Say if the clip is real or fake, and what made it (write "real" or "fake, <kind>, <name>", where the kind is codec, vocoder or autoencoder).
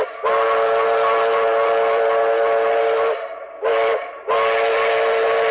real